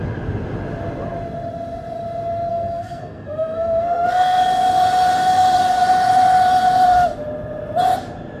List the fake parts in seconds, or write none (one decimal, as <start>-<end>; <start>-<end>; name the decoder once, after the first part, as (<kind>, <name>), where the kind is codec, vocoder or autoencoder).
2.5-4.4 (codec, SNAC)